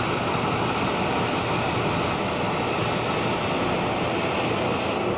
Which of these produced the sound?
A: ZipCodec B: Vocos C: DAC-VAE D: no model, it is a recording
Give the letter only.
D